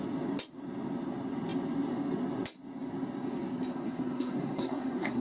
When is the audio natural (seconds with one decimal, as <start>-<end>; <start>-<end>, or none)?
0.0-3.7